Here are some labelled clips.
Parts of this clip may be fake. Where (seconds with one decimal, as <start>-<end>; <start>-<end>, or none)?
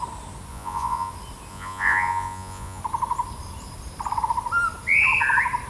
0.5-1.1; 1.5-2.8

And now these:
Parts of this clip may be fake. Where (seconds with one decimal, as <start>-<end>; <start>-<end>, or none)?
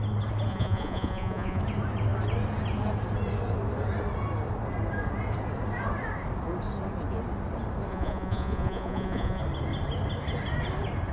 0.5-1.6; 7.9-9.4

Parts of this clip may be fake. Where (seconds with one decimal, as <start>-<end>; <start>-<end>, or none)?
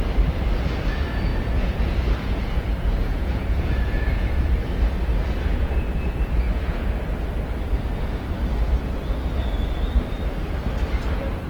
1.3-4.6; 5.5-6.8